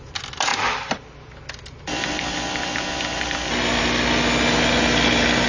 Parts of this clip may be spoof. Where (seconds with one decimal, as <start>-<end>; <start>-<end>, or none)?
none